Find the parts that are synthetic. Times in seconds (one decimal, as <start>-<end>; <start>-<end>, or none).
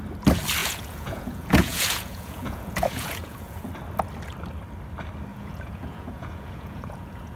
0.6-3.7; 5.3-7.4